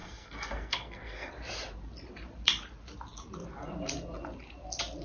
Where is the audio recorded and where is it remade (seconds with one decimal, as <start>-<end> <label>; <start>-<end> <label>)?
0.0-1.3 remade; 1.3-5.0 recorded